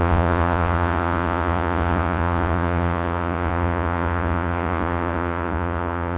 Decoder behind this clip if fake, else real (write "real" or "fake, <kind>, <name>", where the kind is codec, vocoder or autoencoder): fake, vocoder, Vocos